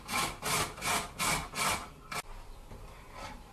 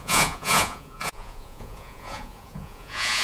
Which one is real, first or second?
first